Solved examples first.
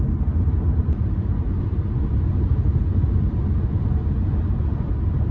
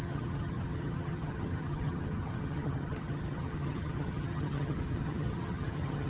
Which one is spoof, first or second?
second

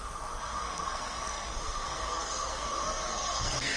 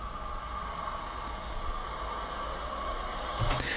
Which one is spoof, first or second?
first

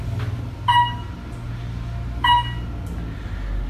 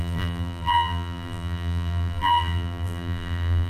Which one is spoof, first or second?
second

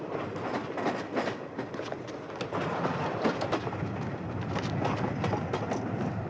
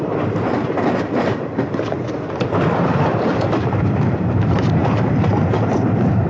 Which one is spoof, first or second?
second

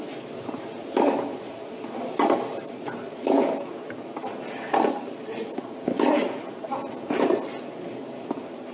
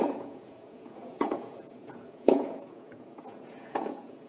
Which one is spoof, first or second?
second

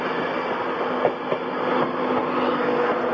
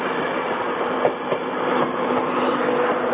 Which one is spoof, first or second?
second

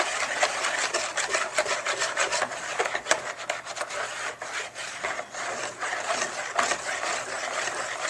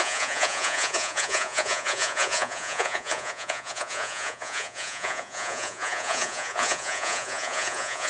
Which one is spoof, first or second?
second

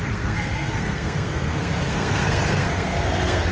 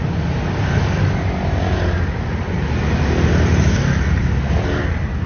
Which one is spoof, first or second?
first